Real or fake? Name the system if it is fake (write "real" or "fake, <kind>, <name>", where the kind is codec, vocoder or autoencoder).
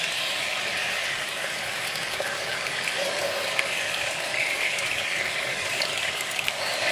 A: fake, codec, DAC